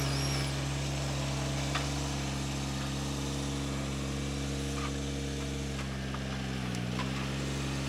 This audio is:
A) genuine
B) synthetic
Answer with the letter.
A